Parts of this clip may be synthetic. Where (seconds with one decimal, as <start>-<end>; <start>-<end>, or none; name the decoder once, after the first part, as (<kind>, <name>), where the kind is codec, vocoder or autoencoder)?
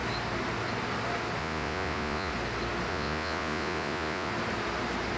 1.4-2.3 (vocoder, Vocos); 2.9-4.3